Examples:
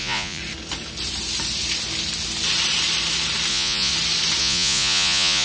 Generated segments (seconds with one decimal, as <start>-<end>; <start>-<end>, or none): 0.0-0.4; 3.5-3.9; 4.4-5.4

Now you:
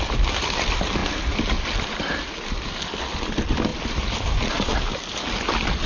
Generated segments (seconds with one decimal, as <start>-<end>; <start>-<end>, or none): none

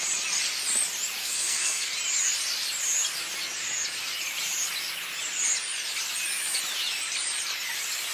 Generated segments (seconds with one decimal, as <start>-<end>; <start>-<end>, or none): 1.2-1.9

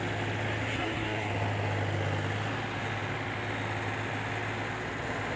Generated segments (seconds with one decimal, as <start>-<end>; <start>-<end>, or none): 0.7-1.3

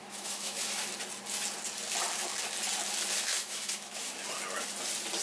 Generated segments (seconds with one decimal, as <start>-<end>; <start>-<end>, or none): 0.0-0.8; 3.2-4.1

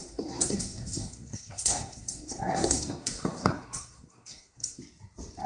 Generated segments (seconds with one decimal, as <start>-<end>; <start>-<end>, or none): 0.0-4.8

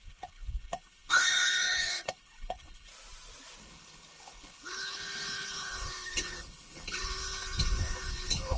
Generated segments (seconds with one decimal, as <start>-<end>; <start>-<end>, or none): 0.0-2.9; 3.6-8.6

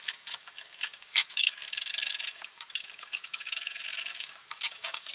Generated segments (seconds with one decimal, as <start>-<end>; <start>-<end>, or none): 0.0-5.1